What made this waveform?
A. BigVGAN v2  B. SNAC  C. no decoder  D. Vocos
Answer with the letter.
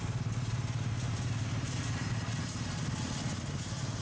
C